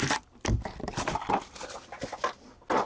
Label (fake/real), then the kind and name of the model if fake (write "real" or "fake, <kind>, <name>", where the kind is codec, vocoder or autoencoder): real